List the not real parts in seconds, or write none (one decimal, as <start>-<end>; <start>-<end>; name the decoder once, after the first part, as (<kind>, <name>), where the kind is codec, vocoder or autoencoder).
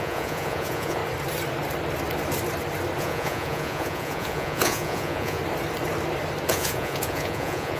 0.0-1.0 (vocoder, Vocos); 3.0-5.4; 6.5-7.8